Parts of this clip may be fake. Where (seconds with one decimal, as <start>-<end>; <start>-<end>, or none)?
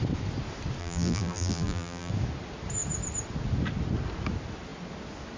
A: 0.8-2.1